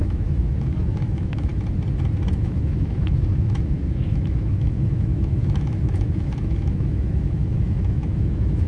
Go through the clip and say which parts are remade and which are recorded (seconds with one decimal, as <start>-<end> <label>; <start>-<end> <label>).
0.0-1.5 remade; 1.5-2.3 recorded; 2.3-8.7 remade

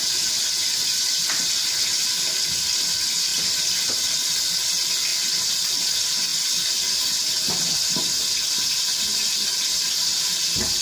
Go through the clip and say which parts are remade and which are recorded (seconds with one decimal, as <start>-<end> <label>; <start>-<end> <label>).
0.0-3.3 recorded; 3.3-4.3 remade; 4.3-5.1 recorded; 5.1-5.7 remade; 5.7-10.8 recorded

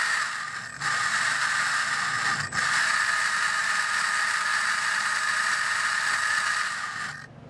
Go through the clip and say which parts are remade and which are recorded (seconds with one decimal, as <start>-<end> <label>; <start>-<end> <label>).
0.0-7.5 recorded

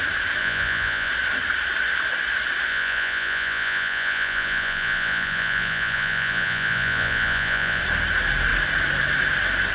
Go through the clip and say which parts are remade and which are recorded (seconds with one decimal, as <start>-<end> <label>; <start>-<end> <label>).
0.0-0.4 recorded; 0.4-1.1 remade; 1.1-2.7 recorded; 2.7-7.8 remade; 7.8-9.7 recorded

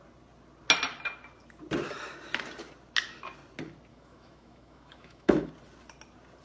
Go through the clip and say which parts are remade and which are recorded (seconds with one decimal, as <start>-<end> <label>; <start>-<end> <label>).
0.0-3.9 recorded; 3.9-5.5 remade; 5.5-6.4 recorded

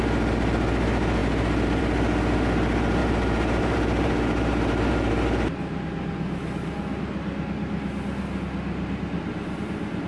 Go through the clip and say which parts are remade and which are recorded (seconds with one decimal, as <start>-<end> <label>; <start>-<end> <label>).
0.0-3.0 recorded; 3.0-5.1 remade; 5.1-10.1 recorded

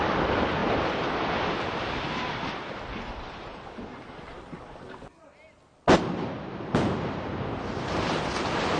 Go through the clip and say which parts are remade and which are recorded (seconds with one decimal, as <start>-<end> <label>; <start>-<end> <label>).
0.0-8.8 recorded